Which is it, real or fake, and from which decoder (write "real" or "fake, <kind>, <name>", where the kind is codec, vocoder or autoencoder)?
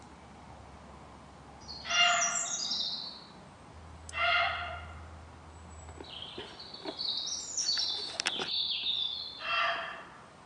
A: real